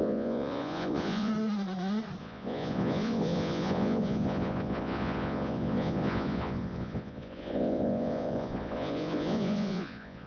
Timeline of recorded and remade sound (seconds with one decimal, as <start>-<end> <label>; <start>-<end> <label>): 0.0-1.3 remade; 1.3-2.2 recorded; 2.2-10.3 remade